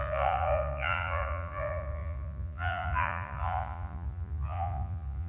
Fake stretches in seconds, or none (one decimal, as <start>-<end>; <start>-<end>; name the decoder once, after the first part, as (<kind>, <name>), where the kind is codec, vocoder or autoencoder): 0.0-5.3 (vocoder, Vocos)